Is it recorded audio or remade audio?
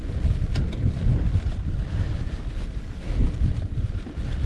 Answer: recorded